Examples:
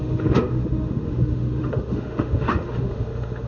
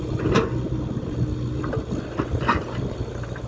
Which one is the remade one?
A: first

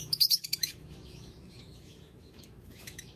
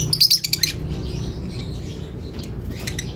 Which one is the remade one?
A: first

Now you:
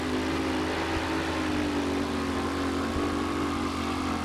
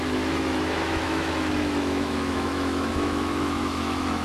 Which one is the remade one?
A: second